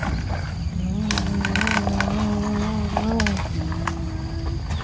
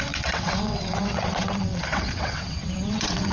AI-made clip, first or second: second